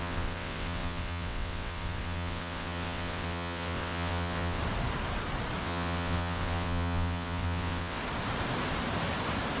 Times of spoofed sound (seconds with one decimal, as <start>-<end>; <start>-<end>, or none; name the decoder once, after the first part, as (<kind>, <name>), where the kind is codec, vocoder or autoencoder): 0.0-4.6 (vocoder, WaveNeXt); 5.6-8.0